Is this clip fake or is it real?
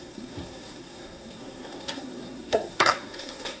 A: fake